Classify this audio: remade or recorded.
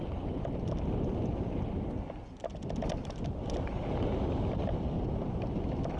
recorded